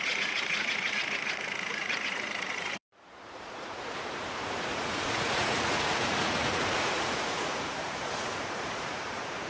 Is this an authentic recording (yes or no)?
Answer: no